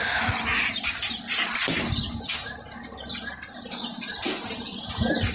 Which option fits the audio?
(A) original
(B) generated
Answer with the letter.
A